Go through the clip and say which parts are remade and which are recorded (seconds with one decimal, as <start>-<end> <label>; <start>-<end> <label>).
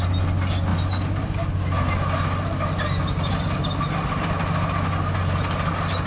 0.0-6.1 recorded